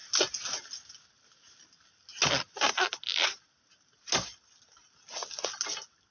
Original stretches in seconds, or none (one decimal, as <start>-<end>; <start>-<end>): 0.0-6.1